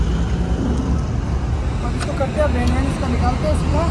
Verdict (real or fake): real